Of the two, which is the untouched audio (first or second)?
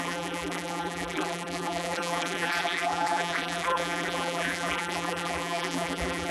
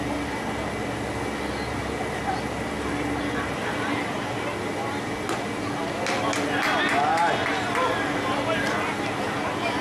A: second